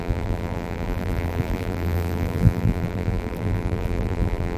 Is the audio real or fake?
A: fake